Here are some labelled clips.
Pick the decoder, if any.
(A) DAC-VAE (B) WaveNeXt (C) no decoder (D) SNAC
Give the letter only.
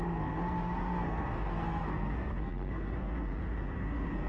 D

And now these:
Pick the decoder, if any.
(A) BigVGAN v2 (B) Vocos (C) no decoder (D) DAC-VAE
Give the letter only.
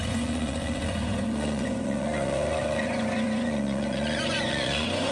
B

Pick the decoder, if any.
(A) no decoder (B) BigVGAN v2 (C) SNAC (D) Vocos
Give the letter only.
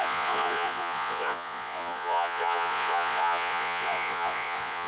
D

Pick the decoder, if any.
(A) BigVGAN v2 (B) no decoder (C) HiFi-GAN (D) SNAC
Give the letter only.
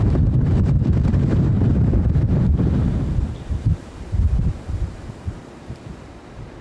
A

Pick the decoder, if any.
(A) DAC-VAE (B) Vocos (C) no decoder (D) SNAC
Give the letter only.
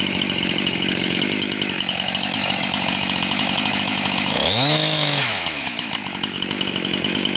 A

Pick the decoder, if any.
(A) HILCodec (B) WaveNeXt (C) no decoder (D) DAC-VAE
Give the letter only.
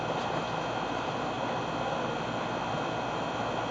C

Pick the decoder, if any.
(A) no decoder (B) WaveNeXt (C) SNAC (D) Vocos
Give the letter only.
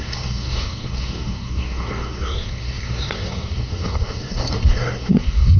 C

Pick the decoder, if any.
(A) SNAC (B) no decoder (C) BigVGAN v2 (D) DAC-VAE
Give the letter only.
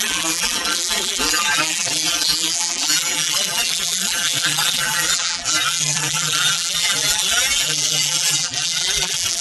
C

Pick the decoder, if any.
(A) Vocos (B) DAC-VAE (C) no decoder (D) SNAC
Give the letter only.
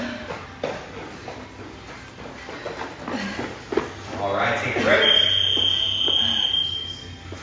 C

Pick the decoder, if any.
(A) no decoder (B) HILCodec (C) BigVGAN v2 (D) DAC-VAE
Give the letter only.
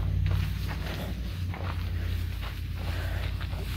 A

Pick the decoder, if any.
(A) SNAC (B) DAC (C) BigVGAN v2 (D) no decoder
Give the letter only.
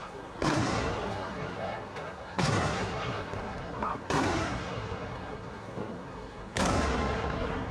A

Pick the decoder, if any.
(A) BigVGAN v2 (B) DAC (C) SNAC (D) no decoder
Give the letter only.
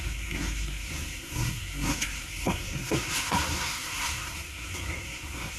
C